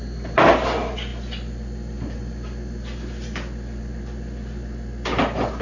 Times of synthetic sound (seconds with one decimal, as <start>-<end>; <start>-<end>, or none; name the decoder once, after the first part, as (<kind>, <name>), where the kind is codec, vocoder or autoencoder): none